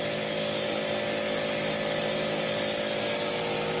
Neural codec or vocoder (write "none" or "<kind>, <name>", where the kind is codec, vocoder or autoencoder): none